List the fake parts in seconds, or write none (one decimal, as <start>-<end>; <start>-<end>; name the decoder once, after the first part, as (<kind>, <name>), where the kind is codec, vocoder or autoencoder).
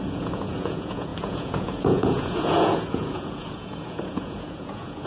0.0-5.1 (vocoder, Vocos)